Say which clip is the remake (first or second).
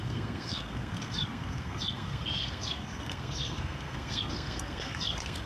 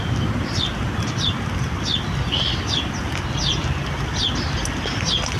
first